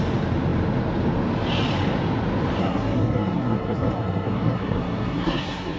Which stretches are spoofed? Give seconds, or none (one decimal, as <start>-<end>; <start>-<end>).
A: 2.6-5.8